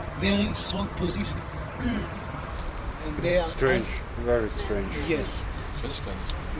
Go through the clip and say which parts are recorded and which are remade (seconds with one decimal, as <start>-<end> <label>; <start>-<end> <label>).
0.0-2.5 remade; 2.5-6.6 recorded